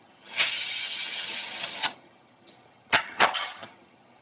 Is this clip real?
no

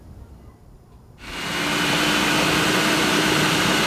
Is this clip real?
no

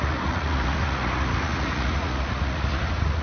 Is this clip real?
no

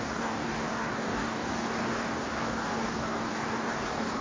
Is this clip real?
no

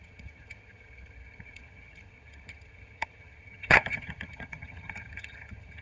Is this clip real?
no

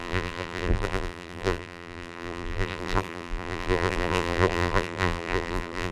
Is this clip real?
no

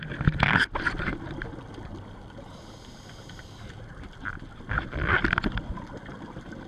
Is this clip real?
yes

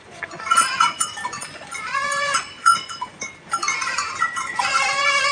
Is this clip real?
no